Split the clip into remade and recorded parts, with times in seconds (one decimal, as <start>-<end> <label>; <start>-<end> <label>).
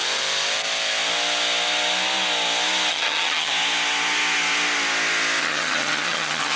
0.0-2.9 recorded; 2.9-3.5 remade; 3.5-5.4 recorded; 5.4-6.6 remade